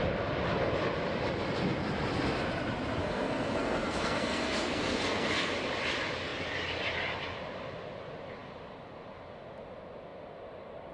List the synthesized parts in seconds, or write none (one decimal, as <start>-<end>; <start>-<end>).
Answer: 3.0-5.5